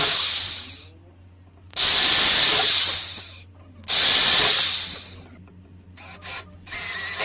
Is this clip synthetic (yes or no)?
no